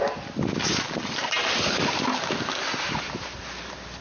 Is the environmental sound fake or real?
real